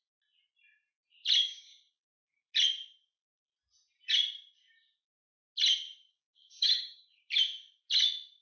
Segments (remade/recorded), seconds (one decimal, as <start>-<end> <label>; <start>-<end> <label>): 0.0-1.4 recorded; 1.4-2.5 remade; 2.5-6.1 recorded; 6.1-7.3 remade; 7.3-8.4 recorded